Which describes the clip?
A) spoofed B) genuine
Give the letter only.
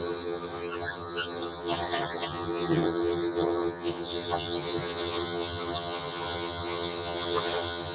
A